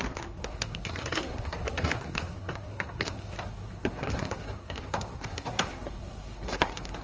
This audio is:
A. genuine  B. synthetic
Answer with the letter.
B